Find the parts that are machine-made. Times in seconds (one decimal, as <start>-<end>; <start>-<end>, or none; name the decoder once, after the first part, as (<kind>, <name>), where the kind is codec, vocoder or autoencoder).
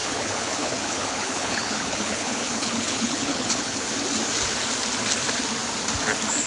0.0-3.9 (codec, HILCodec)